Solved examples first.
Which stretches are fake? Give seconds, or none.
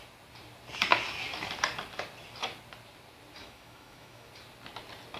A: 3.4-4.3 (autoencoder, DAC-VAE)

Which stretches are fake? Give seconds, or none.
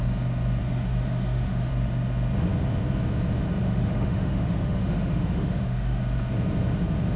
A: 0.6-1.7 (autoencoder, DAC-VAE); 3.6-6.0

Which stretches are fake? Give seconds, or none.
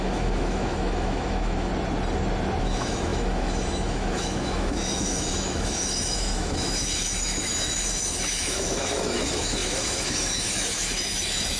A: 0.0-1.7 (autoencoder, DAC-VAE); 2.6-11.6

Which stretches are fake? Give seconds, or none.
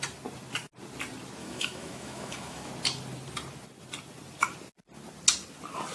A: 1.4-2.7 (autoencoder, DAC-VAE)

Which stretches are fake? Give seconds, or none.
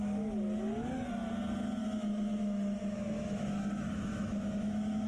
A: 1.8-5.1 (autoencoder, DAC-VAE)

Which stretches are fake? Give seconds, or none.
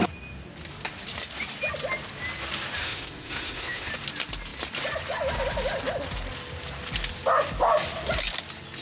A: 2.8-3.9 (autoencoder, DAC-VAE)